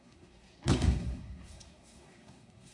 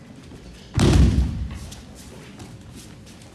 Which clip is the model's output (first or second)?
first